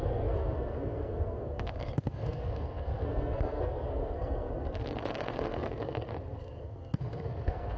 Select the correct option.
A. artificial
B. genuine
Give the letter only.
A